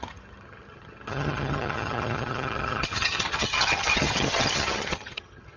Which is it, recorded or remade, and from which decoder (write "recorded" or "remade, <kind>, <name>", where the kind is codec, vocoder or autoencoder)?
remade, vocoder, HiFi-GAN